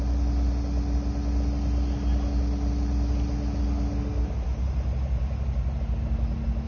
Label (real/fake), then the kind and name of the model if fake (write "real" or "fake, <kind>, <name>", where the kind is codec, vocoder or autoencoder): real